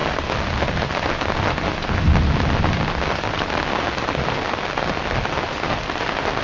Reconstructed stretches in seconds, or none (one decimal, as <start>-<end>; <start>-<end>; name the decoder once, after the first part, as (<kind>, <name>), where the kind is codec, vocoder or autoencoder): none